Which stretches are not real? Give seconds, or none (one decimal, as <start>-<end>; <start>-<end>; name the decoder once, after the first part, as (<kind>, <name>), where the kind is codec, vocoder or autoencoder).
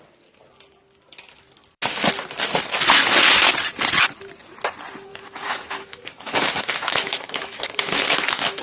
5.1-8.6 (autoencoder, DAC-VAE)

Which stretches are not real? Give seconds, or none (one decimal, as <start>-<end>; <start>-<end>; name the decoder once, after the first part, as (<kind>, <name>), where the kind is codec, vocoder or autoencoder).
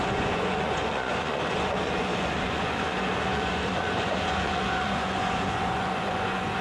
0.0-6.6 (vocoder, Vocos)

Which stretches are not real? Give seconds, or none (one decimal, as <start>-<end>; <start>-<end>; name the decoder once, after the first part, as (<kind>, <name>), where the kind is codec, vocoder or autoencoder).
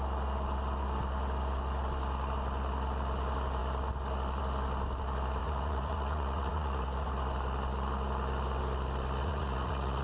5.4-7.1 (vocoder, Vocos); 9.2-10.0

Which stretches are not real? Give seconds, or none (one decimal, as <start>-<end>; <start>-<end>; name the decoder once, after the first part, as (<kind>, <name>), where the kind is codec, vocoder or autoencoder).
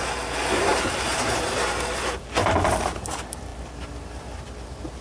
none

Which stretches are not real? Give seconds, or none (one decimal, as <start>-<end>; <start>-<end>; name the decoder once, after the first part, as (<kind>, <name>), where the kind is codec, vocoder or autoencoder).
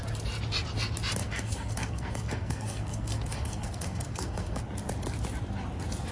1.2-4.6 (codec, SNAC)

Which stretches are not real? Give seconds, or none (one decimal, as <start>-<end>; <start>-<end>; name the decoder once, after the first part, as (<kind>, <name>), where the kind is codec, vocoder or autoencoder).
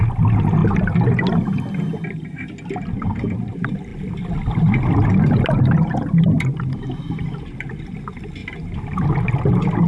none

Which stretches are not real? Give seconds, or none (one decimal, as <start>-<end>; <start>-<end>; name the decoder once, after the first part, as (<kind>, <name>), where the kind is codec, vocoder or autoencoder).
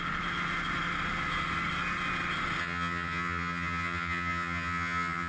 2.6-5.3 (vocoder, HiFi-GAN)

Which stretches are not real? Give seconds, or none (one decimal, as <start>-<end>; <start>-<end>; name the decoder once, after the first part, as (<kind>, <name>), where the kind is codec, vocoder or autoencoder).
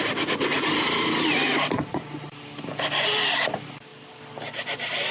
none